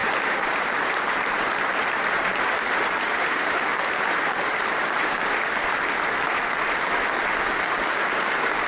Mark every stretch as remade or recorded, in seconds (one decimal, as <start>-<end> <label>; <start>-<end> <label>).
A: 0.0-5.2 remade; 5.2-8.7 recorded